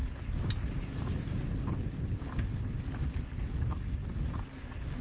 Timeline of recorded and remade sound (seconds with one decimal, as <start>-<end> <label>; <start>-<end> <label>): 0.0-5.0 recorded